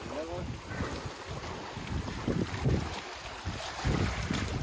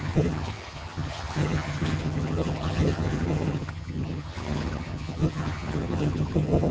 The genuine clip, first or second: first